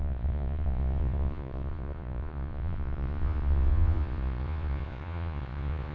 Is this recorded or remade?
remade